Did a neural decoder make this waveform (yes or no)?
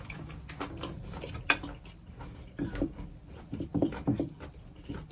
no